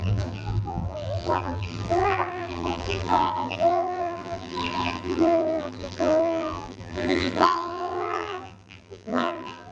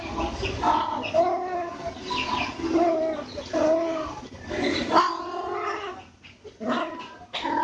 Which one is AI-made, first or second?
first